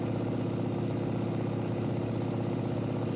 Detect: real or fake real